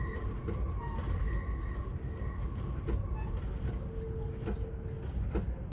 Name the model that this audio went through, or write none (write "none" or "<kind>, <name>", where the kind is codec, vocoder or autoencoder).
none